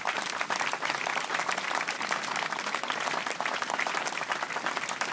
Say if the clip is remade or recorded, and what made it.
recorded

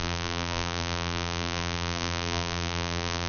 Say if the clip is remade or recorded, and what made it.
remade, vocoder, BigVGAN v2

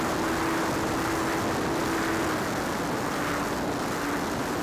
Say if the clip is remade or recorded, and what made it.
recorded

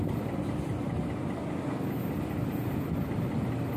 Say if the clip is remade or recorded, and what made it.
recorded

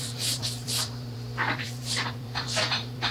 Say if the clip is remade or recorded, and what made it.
remade, vocoder, BigVGAN v2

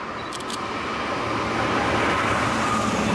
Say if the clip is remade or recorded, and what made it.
recorded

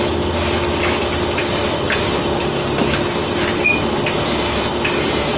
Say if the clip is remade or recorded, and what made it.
recorded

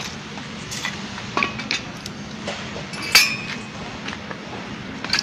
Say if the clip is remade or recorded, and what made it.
recorded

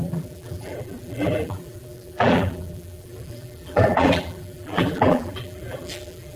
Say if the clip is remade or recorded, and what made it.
remade, vocoder, BigVGAN v2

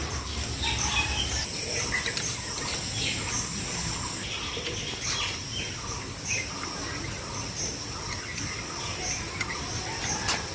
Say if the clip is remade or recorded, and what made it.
recorded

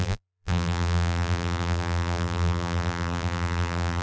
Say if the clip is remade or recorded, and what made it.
remade, vocoder, BigVGAN v2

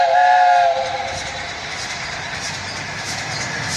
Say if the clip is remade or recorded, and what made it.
recorded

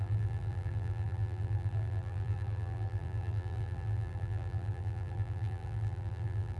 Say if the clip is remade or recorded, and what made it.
remade, vocoder, BigVGAN v2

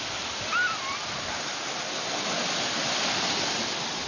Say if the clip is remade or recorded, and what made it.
recorded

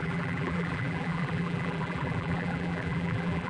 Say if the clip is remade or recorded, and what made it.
remade, vocoder, BigVGAN v2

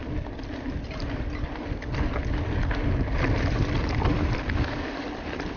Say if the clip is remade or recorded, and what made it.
recorded